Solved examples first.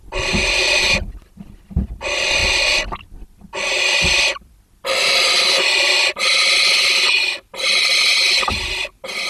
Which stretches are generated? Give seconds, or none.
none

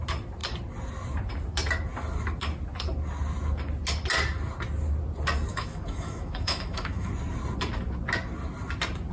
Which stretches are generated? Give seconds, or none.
5.5-7.1 (autoencoder, DAC-VAE)

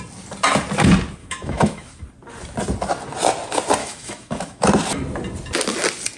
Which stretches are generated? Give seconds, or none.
1.2-1.9 (autoencoder, DAC-VAE); 3.8-4.6

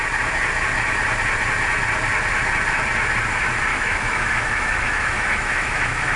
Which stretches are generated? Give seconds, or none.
3.7-6.2 (autoencoder, DAC-VAE)

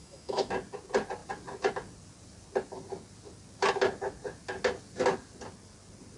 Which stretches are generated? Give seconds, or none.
0.0-0.5 (autoencoder, DAC-VAE)

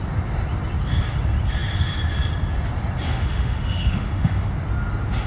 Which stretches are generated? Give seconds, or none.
3.1-4.5 (autoencoder, DAC-VAE)

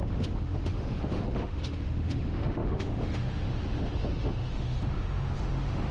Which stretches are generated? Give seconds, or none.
0.0-5.9 (autoencoder, DAC-VAE)

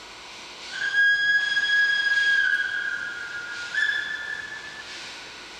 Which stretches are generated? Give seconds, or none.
0.0-1.4 (autoencoder, DAC-VAE); 4.8-5.6